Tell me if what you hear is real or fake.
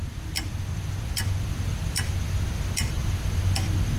real